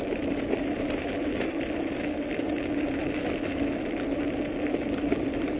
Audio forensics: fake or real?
real